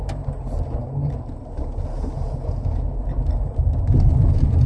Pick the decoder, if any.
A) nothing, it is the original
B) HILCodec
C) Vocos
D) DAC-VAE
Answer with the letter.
A